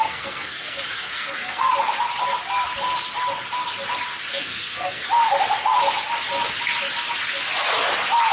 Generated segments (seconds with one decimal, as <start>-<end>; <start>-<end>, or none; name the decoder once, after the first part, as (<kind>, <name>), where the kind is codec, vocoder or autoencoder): 0.0-1.7 (codec, SNAC); 4.3-5.1